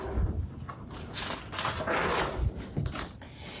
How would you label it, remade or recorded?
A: recorded